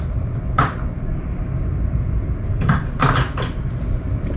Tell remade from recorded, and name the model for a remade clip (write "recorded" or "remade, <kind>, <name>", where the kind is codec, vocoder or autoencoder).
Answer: recorded